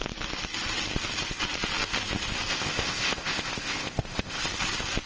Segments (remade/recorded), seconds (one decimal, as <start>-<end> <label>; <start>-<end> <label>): 0.0-2.5 recorded; 2.5-4.4 remade; 4.4-5.1 recorded